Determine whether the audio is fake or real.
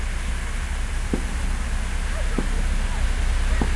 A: real